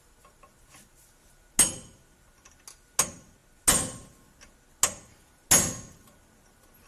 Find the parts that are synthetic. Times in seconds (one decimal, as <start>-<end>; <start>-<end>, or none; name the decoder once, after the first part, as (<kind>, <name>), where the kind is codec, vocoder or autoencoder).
none